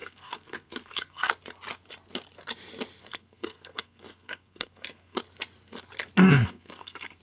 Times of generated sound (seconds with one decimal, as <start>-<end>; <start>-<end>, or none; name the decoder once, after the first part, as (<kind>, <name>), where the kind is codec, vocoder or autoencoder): 0.0-1.3 (codec, SNAC); 3.0-5.2; 6.2-7.2